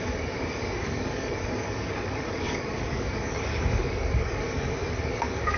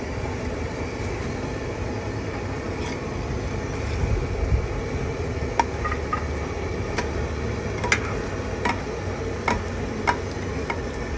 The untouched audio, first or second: second